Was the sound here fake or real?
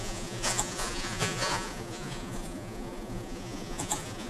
fake